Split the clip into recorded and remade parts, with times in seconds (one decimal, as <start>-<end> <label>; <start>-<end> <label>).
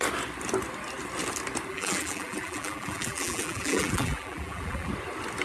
0.0-1.7 recorded; 1.7-4.9 remade; 4.9-5.4 recorded